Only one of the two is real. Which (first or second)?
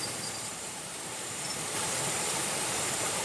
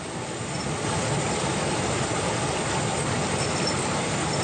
second